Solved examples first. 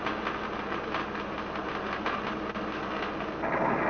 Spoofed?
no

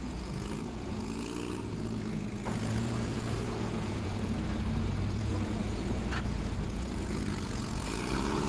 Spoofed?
yes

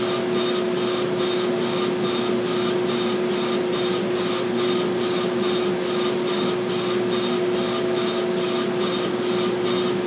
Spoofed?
no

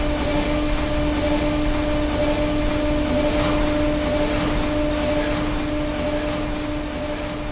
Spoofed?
no